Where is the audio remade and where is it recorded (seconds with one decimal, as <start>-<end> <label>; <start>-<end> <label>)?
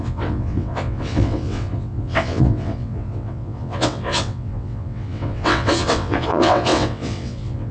0.0-7.7 remade